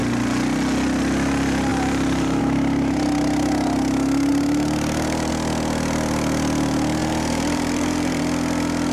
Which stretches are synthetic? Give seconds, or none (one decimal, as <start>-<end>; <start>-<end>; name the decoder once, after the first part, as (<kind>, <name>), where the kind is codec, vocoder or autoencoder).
1.7-2.4 (vocoder, BigVGAN v2); 4.3-5.3; 7.0-8.2